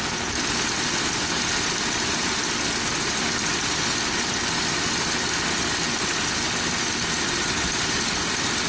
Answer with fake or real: real